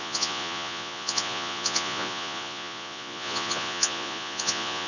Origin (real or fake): fake